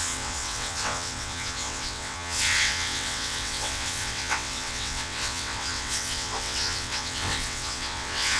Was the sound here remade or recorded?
remade